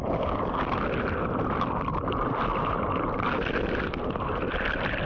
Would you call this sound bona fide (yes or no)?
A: yes